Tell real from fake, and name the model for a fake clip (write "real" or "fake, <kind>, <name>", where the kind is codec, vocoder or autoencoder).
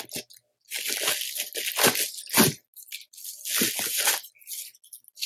real